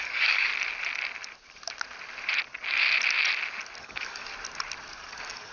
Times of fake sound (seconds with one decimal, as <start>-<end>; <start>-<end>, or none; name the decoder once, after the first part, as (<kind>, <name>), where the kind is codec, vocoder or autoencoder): 0.0-0.5 (codec, DAC); 3.8-4.3; 5.1-5.5